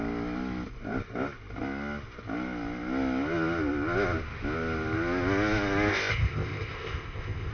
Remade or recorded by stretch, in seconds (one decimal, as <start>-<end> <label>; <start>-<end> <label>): 0.0-5.9 recorded; 5.9-7.5 remade